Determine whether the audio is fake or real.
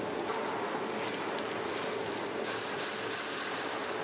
real